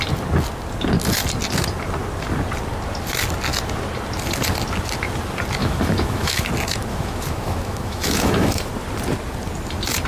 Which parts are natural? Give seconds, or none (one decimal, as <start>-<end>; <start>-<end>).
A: 0.0-5.6; 6.5-6.9; 8.7-10.1